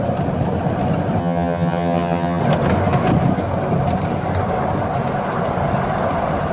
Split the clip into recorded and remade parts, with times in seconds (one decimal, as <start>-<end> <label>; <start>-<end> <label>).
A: 0.0-1.2 recorded; 1.2-2.4 remade; 2.4-6.5 recorded